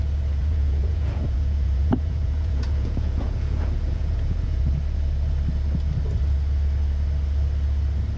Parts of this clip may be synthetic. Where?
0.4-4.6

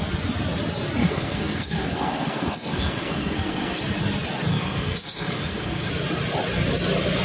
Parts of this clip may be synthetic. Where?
1.0-3.8; 4.5-5.9